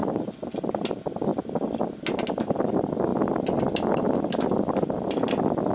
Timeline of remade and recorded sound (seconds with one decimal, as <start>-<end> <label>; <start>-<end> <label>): 0.0-5.7 recorded